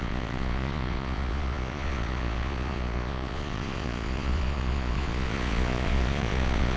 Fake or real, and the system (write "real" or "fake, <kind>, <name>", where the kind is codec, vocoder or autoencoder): fake, vocoder, Vocos